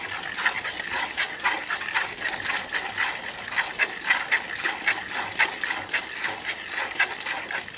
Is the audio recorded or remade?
recorded